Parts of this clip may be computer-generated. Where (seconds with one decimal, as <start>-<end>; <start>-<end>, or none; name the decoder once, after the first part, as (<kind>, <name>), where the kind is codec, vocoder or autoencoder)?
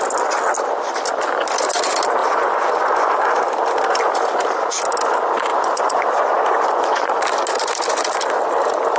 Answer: 2.2-3.4 (vocoder, Vocos); 5.5-7.2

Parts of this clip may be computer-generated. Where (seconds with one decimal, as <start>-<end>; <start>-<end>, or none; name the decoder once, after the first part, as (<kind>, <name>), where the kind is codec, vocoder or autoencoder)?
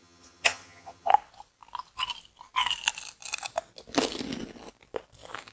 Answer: 0.0-1.1 (vocoder, HiFi-GAN)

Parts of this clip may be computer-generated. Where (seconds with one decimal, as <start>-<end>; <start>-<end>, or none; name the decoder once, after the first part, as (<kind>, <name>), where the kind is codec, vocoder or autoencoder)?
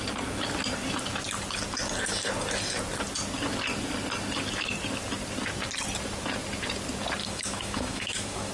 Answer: 7.2-8.5 (autoencoder, DAC-VAE)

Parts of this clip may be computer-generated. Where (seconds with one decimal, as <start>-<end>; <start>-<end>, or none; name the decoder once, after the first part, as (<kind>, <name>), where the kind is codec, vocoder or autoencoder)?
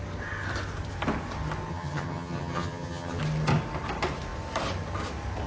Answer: 1.7-3.2 (vocoder, HiFi-GAN)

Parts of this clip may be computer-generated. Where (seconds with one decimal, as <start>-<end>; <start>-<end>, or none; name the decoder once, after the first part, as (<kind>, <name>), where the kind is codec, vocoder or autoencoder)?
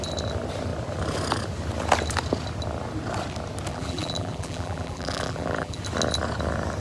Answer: 3.7-5.8 (vocoder, BigVGAN v2)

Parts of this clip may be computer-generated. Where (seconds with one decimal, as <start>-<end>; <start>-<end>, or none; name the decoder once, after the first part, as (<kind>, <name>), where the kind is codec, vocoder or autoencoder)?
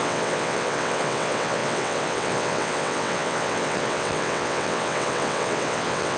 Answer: 0.0-6.2 (vocoder, WaveNeXt)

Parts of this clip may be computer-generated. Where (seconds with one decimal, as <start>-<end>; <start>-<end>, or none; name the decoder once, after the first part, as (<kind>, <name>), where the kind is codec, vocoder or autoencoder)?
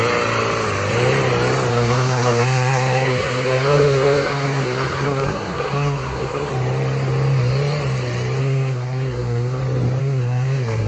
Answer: 1.7-6.5 (codec, SNAC); 8.4-9.6; 10.0-10.9